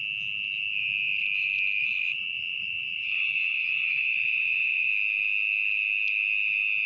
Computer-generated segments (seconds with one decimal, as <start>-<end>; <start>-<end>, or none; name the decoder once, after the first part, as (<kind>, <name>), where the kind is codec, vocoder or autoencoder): 1.8-4.9 (vocoder, BigVGAN v2)